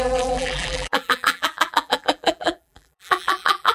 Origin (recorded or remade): remade